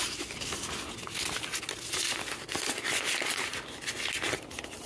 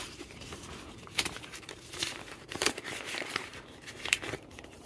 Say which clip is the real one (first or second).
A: first